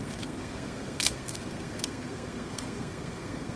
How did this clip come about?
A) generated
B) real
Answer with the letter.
A